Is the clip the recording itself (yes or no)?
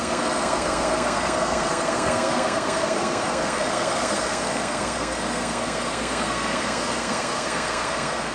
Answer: no